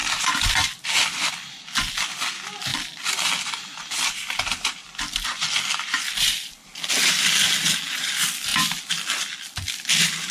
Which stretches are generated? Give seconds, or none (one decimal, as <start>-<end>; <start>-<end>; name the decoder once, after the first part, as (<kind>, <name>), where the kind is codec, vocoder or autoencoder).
0.0-1.3 (vocoder, BigVGAN v2); 2.7-7.1

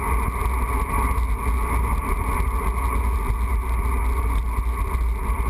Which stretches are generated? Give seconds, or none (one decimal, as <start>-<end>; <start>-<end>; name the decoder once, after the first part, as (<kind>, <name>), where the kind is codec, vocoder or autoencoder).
none

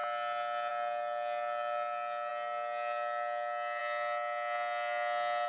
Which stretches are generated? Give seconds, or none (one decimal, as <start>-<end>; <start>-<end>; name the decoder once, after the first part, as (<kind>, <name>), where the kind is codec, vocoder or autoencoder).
none

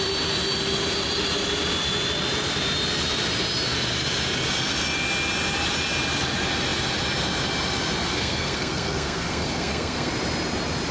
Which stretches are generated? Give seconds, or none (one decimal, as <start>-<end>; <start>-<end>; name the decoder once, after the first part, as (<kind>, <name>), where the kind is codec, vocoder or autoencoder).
8.1-10.1 (codec, SNAC)

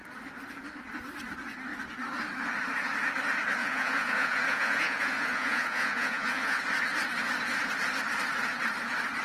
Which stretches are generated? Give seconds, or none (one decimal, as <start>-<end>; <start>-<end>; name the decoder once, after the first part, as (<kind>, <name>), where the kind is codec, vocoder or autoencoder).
3.6-6.6 (vocoder, Vocos)

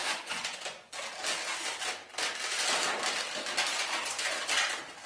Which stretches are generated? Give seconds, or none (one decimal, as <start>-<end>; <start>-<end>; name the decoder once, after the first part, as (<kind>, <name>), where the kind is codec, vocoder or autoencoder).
0.0-0.9 (vocoder, Vocos); 3.7-4.4

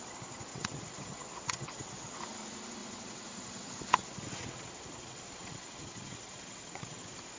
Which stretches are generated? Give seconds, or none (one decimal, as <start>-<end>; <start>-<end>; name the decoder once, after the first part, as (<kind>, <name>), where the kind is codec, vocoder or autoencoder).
0.5-2.2 (vocoder, WaveNeXt); 2.8-7.0

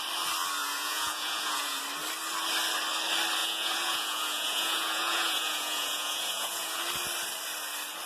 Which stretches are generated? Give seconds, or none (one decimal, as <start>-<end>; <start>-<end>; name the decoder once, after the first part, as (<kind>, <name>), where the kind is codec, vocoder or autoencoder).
0.6-1.8 (vocoder, Vocos); 3.4-6.8